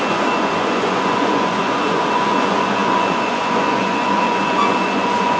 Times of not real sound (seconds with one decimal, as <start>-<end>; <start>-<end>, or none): 0.0-5.4